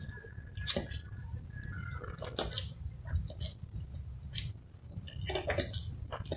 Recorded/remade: recorded